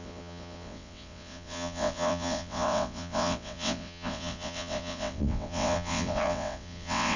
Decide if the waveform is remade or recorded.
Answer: remade